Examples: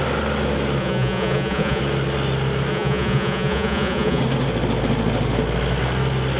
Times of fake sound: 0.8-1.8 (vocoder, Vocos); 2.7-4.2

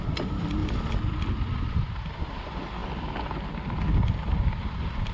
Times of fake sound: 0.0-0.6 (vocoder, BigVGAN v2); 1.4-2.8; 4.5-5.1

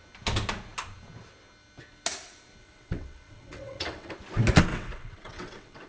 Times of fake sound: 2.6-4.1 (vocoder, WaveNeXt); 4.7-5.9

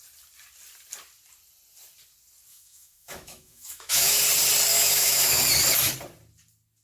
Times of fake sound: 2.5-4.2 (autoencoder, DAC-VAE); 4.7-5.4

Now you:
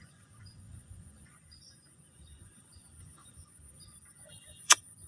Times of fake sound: 0.0-5.1 (vocoder, Vocos)